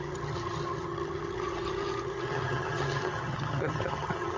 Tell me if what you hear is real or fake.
fake